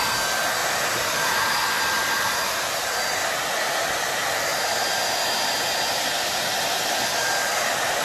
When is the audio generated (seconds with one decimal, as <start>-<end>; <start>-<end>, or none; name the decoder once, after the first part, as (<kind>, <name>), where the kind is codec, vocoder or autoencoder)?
0.6-1.4 (vocoder, BigVGAN v2)